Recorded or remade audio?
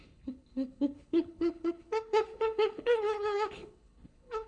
remade